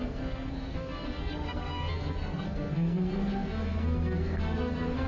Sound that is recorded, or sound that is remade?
remade